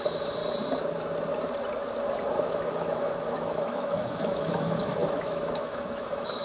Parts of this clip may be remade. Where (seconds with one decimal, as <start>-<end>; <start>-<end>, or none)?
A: 0.0-0.4; 2.5-6.4